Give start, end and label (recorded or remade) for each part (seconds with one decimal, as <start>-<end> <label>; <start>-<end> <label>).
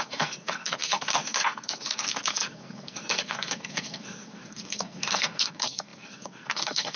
0.0-7.0 remade